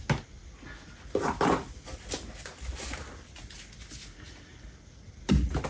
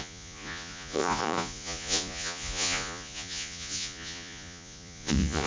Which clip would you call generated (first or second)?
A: second